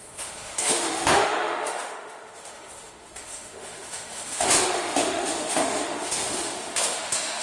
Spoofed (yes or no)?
yes